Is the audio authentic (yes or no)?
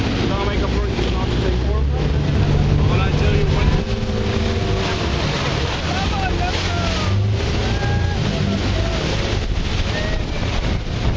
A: yes